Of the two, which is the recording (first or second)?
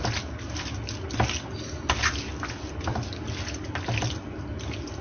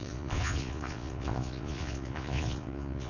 first